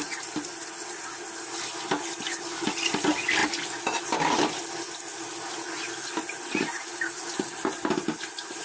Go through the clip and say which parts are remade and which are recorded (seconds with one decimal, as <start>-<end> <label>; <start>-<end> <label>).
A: 0.0-8.6 recorded